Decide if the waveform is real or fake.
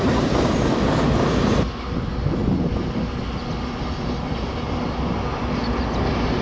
real